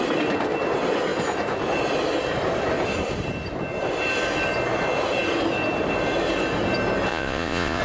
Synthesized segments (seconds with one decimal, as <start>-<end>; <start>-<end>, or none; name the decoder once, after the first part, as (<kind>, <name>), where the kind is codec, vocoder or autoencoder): 7.1-7.8 (vocoder, Vocos)